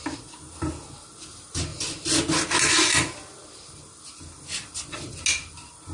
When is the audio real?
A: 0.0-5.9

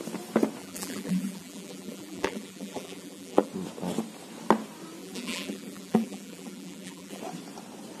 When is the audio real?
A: 0.0-0.6; 3.5-5.0; 7.2-8.0

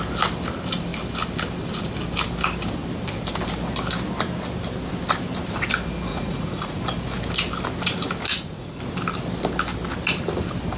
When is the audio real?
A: 0.0-6.1; 6.8-8.3; 8.8-10.8

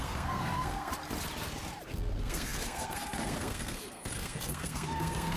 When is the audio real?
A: 0.9-1.9

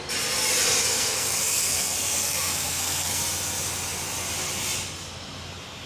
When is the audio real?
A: 0.0-0.8; 3.2-5.9

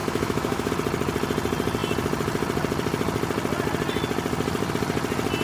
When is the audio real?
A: 0.7-5.4

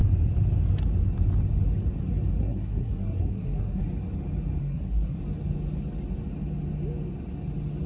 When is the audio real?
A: 0.0-2.4; 3.8-4.6; 5.2-7.9

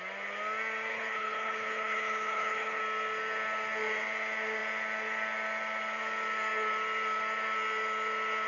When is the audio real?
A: 0.0-0.9; 2.8-8.5